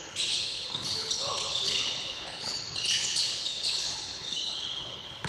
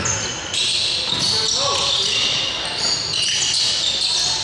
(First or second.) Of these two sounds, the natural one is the second